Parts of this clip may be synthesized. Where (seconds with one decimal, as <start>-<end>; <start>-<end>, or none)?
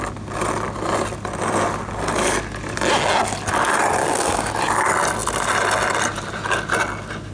4.0-4.5